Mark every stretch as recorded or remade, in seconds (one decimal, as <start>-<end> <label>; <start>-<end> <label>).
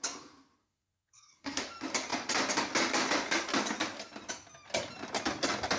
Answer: 0.0-0.6 recorded; 0.6-1.6 remade; 1.6-5.8 recorded